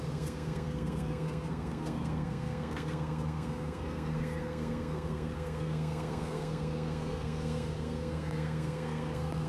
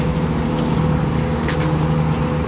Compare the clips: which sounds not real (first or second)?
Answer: first